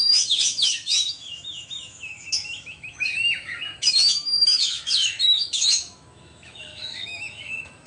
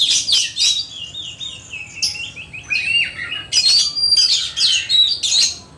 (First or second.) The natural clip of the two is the second